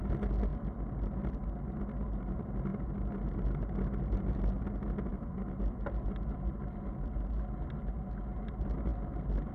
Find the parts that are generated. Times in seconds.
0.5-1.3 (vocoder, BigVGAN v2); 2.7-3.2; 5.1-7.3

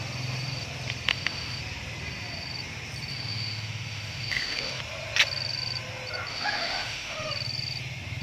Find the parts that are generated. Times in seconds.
1.1-1.6 (autoencoder, DAC-VAE); 3.1-4.8; 6.3-7.3

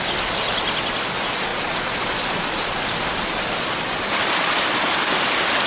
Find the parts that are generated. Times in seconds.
none

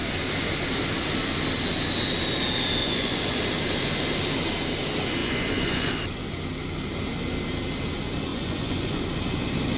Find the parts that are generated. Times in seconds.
2.8-3.4 (vocoder, Vocos); 5.2-5.9; 8.3-9.0

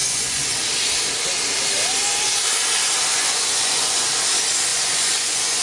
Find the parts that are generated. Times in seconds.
0.0-0.6 (vocoder, Vocos); 3.1-4.0; 4.7-5.6

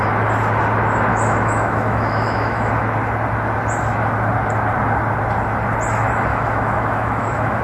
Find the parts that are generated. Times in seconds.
1.1-2.7 (autoencoder, DAC-VAE); 6.3-7.6